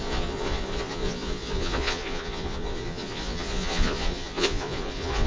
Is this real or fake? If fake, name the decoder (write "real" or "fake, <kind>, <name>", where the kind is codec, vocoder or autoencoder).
fake, vocoder, Vocos